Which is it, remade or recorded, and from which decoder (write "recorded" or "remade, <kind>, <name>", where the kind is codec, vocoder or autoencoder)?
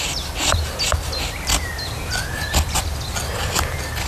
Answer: recorded